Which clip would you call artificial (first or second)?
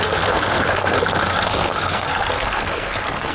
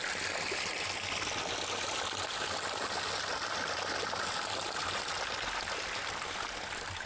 first